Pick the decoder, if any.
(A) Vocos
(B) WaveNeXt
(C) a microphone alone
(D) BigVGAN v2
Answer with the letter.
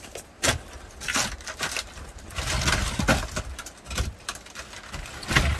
C